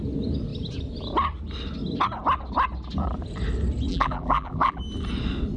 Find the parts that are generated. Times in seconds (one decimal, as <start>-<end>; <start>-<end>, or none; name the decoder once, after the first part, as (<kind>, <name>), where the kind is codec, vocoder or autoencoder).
3.9-4.8 (vocoder, BigVGAN v2)